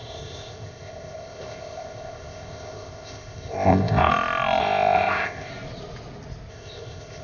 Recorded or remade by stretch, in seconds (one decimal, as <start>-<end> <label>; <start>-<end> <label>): 0.0-4.1 remade; 4.1-4.6 recorded; 4.6-5.5 remade; 5.5-6.5 recorded; 6.5-7.2 remade